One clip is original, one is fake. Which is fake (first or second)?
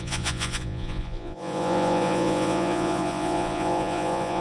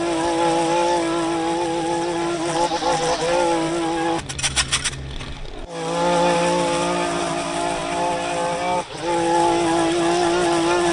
first